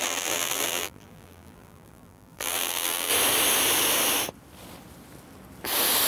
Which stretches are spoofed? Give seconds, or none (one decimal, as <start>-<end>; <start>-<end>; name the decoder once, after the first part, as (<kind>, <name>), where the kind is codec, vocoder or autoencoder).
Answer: 0.0-3.1 (vocoder, BigVGAN v2)